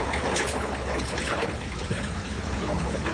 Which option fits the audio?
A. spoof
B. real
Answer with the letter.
A